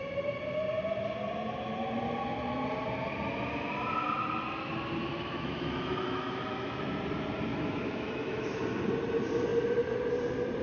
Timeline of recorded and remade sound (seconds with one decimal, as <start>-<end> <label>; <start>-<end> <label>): 0.0-5.1 recorded; 5.1-6.8 remade; 6.8-7.5 recorded; 7.5-8.6 remade; 8.6-10.6 recorded